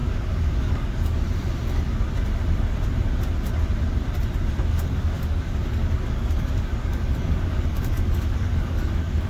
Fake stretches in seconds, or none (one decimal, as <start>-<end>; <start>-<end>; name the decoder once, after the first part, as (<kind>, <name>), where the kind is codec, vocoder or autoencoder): 0.0-1.2 (codec, DAC); 4.7-9.3